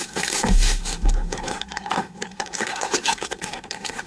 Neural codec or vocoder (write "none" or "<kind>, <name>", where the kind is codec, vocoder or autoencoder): codec, SNAC